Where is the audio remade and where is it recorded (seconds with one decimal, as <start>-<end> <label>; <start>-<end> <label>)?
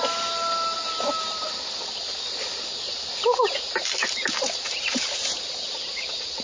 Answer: 0.0-6.4 recorded